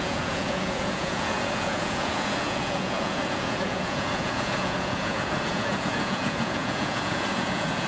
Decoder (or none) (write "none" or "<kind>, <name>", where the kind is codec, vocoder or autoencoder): vocoder, Vocos